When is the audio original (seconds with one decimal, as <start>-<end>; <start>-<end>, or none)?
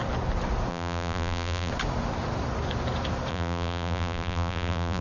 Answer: 0.0-0.7; 1.7-3.3